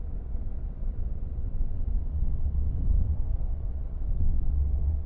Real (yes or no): no